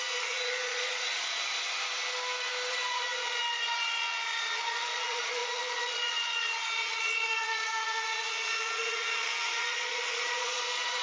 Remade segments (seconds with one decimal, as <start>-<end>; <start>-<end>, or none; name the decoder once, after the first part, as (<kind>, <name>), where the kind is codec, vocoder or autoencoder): 0.0-1.4 (vocoder, Vocos); 2.7-11.0